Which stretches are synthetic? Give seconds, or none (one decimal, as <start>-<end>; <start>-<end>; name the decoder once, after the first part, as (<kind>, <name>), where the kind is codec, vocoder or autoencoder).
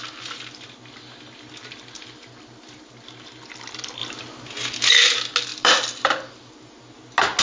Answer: 5.5-6.7 (vocoder, BigVGAN v2)